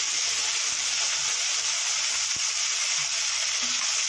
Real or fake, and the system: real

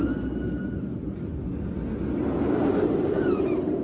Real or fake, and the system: real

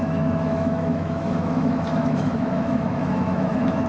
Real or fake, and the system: fake, autoencoder, DAC-VAE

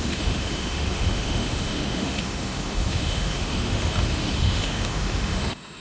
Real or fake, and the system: fake, autoencoder, DAC-VAE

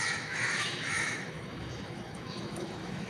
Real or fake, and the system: fake, autoencoder, DAC-VAE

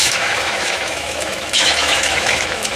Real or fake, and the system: fake, autoencoder, DAC-VAE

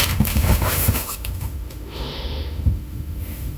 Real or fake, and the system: fake, autoencoder, DAC-VAE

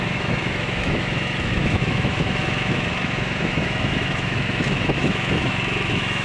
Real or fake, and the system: fake, autoencoder, DAC-VAE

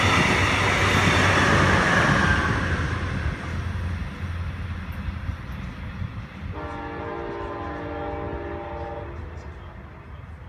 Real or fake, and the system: real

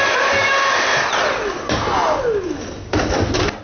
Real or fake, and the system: real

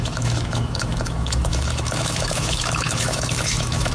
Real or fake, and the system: fake, autoencoder, DAC-VAE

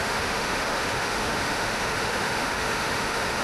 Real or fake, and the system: fake, autoencoder, DAC-VAE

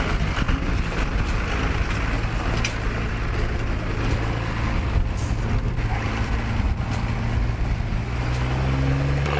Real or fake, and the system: real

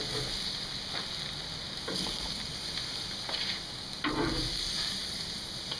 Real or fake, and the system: real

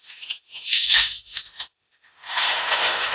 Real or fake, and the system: fake, autoencoder, DAC-VAE